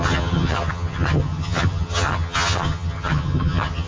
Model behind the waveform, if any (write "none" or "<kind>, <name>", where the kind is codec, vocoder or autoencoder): vocoder, HiFi-GAN